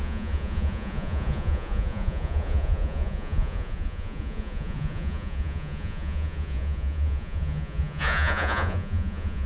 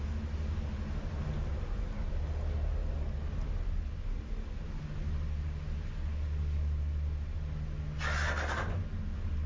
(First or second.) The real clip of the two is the second